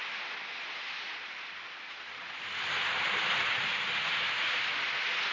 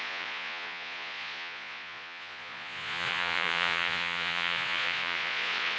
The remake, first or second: second